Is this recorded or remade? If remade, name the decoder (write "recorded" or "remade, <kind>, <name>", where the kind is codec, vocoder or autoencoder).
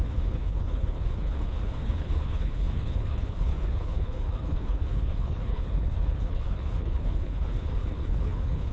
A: remade, codec, HILCodec